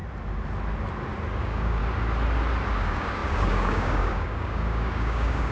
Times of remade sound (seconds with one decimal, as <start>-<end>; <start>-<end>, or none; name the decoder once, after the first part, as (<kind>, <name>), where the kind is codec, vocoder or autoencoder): 1.4-1.8 (codec, DAC); 2.7-5.5